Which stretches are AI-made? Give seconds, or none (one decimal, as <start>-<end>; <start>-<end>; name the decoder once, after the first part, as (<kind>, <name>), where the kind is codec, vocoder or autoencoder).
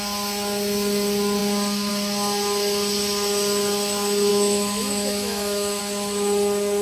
4.3-5.8 (autoencoder, DAC-VAE)